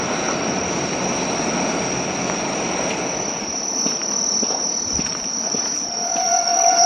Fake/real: real